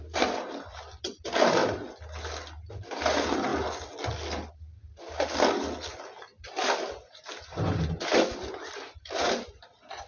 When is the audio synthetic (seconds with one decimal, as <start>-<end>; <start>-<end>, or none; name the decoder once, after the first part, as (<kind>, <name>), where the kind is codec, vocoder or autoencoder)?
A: none